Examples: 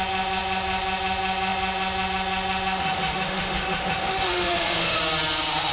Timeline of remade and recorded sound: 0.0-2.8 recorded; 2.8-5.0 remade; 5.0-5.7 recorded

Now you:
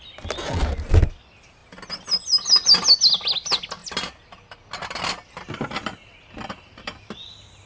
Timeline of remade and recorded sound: 0.0-7.7 recorded